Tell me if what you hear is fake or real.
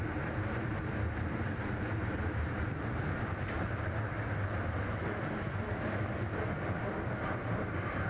fake